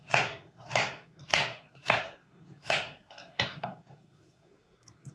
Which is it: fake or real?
fake